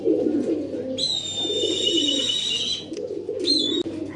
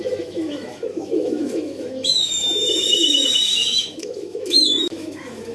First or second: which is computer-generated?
second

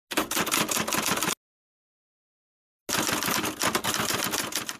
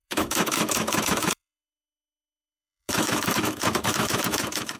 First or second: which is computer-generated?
second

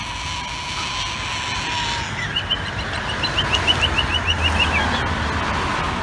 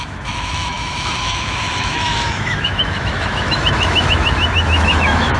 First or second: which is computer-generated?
second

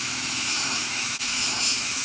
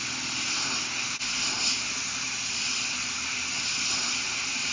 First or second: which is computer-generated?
first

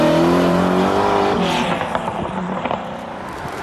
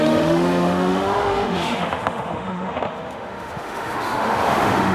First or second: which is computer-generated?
second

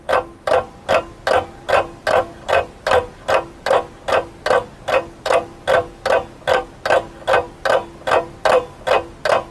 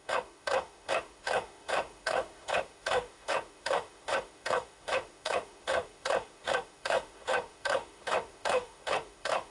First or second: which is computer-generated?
second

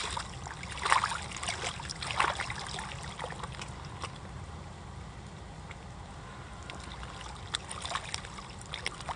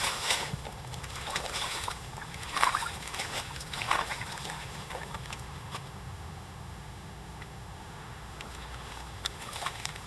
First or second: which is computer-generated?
second